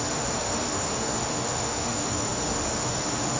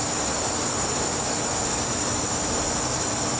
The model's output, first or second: first